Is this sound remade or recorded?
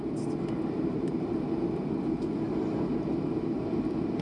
recorded